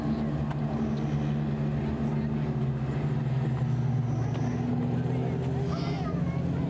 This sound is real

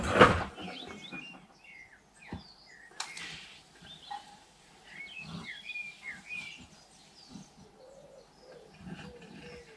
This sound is real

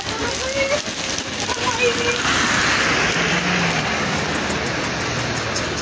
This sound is real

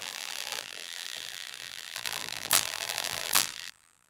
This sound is fake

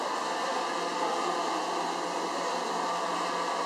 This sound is real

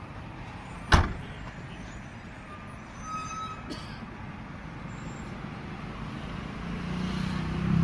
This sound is real